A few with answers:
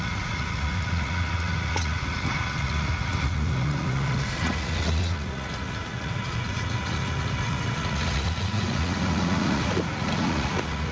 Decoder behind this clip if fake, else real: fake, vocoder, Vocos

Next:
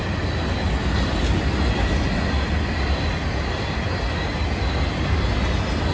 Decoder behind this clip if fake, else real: real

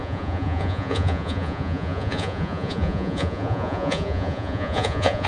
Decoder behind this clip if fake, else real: fake, vocoder, Vocos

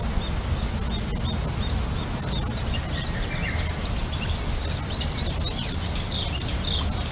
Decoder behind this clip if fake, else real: real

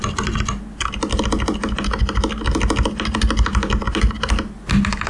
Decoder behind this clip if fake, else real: real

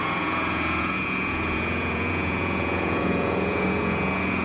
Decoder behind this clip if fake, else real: fake, vocoder, Vocos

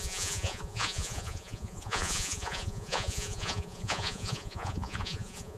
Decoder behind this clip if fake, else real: fake, vocoder, Vocos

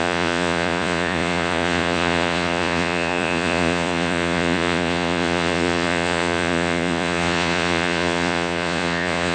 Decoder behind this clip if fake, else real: fake, vocoder, Vocos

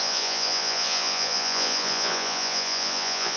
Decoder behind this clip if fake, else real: fake, vocoder, Vocos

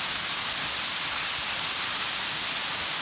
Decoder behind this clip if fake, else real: real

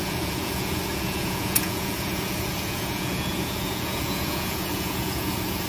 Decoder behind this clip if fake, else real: fake, vocoder, Vocos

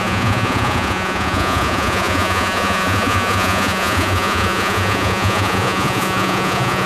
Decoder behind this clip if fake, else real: fake, vocoder, Vocos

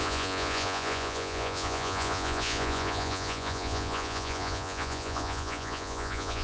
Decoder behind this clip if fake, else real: fake, vocoder, Vocos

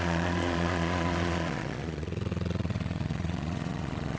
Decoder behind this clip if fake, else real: fake, vocoder, Vocos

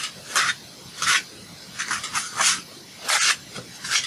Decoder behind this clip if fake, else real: real